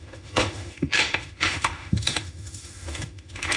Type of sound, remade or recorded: remade